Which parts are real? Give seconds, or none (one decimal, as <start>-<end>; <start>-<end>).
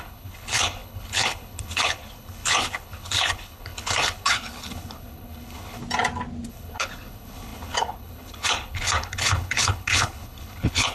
5.8-6.5